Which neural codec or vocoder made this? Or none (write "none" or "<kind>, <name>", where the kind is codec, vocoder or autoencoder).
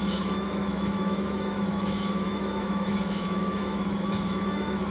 autoencoder, DAC-VAE